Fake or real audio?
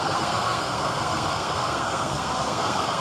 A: fake